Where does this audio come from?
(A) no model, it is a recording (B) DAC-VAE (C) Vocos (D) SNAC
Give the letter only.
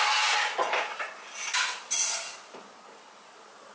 A